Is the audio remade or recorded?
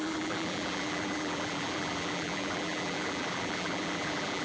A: remade